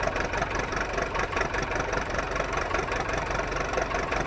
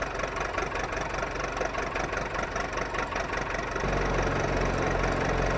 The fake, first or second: first